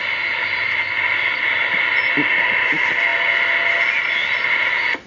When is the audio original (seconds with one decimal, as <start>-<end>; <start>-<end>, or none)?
0.0-5.1